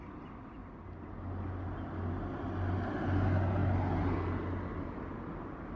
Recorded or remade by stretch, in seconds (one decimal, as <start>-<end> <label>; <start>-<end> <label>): 0.0-5.8 recorded